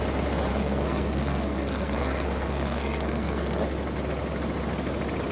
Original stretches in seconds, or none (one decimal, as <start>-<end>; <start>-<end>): 0.0-0.5; 3.6-5.3